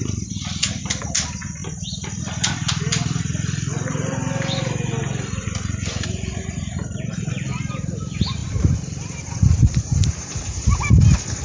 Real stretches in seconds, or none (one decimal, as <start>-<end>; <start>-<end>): 0.0-8.4; 10.8-11.4